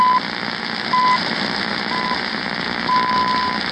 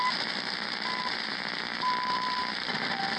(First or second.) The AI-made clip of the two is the second